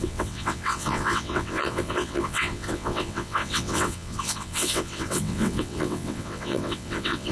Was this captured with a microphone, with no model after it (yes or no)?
no